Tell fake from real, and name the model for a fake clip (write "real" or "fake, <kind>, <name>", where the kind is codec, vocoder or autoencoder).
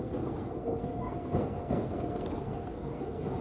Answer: fake, codec, SNAC